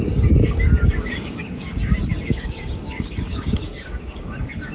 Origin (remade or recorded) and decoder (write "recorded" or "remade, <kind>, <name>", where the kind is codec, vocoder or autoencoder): remade, codec, DAC